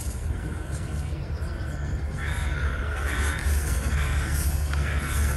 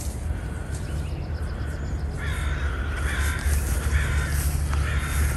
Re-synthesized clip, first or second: first